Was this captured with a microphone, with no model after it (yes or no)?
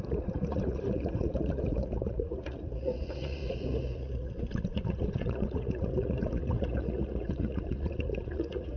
no